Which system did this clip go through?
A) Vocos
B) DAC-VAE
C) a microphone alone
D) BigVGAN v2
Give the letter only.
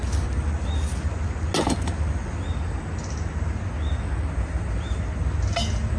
C